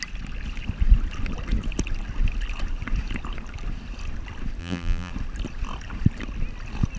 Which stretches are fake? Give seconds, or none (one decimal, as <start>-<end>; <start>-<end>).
4.6-5.1